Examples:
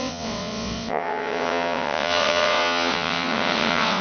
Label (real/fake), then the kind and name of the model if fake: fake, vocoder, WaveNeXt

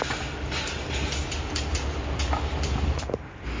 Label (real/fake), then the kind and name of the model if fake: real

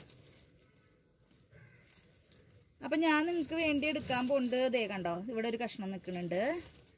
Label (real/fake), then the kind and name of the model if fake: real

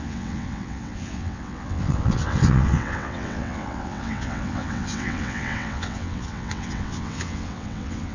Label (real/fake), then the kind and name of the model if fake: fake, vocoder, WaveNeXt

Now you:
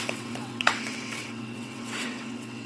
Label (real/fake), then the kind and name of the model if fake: fake, vocoder, WaveNeXt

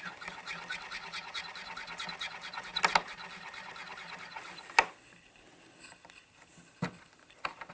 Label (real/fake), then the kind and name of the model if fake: real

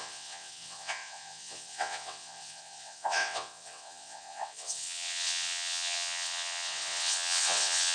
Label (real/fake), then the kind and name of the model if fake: fake, vocoder, WaveNeXt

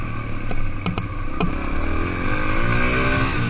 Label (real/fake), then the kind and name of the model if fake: real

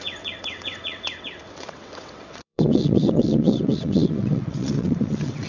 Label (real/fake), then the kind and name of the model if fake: fake, vocoder, WaveNeXt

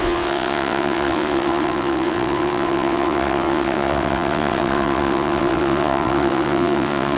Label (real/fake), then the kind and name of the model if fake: fake, vocoder, WaveNeXt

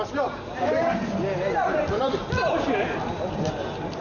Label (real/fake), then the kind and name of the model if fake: real